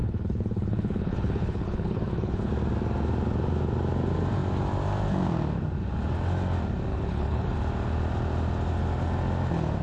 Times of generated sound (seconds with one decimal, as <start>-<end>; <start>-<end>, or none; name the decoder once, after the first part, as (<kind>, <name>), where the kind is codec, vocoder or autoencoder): 0.0-2.5 (codec, HILCodec); 6.9-7.5